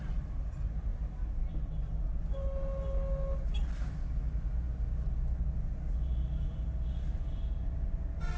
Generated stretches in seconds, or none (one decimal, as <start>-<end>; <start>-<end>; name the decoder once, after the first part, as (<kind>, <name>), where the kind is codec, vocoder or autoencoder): none